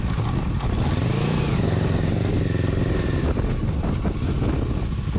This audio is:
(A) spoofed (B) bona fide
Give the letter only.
B